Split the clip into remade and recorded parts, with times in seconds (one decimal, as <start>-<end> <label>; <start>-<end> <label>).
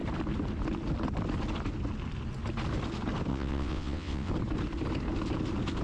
0.0-3.3 recorded; 3.3-4.3 remade; 4.3-5.8 recorded